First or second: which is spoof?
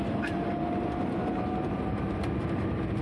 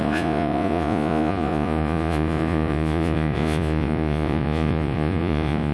second